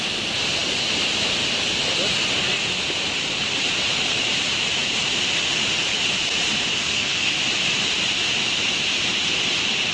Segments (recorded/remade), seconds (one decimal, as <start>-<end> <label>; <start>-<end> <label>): 0.0-6.7 recorded; 6.7-7.3 remade; 7.3-9.9 recorded

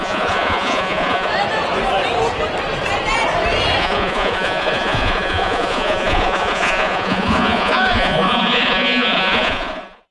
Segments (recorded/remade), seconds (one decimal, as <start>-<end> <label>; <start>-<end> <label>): 0.0-1.3 remade; 1.3-3.8 recorded; 3.8-10.1 remade

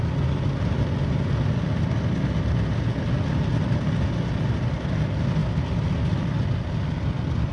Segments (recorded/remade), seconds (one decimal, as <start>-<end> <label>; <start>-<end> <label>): 0.0-7.5 recorded

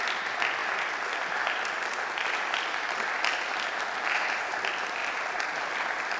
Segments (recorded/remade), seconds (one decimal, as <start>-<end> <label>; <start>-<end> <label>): 0.0-6.2 recorded

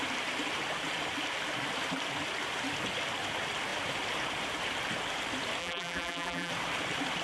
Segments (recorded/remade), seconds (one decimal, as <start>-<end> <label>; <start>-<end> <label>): 0.0-5.6 recorded; 5.6-6.5 remade; 6.5-7.2 recorded

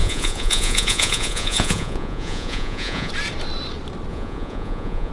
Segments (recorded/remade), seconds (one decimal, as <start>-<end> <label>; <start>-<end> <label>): 0.0-3.1 remade; 3.1-4.1 recorded; 4.1-5.1 remade

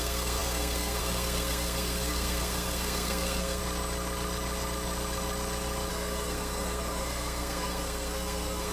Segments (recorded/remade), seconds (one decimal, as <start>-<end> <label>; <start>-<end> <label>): 0.0-3.6 remade; 3.6-5.9 recorded; 5.9-8.7 remade